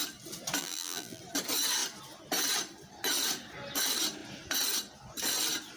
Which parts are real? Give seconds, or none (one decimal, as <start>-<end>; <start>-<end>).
0.0-0.6; 1.2-5.8